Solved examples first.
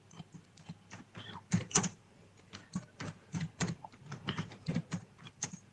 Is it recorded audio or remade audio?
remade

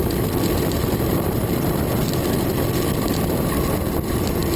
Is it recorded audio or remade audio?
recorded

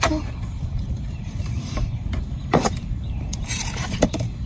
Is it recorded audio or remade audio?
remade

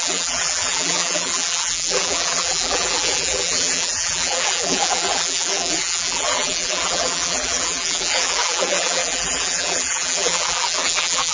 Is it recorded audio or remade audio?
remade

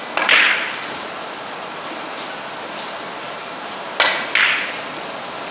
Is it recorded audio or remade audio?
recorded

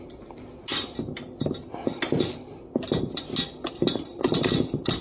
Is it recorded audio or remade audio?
recorded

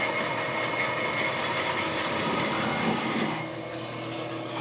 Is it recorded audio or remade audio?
recorded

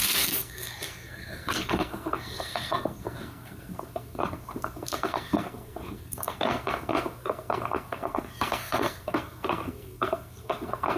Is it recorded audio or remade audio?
remade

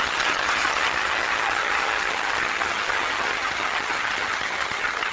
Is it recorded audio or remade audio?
remade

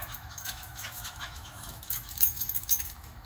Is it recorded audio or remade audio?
remade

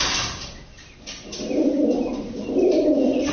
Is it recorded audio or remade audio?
remade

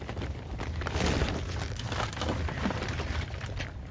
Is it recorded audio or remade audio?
remade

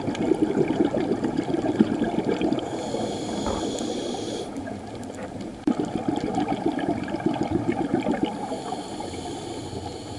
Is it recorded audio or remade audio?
remade